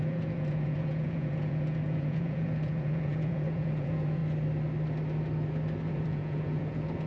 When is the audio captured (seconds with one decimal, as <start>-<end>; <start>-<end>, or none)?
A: 4.2-5.9